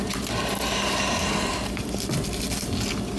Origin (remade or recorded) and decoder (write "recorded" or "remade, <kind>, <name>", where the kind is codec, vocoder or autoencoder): recorded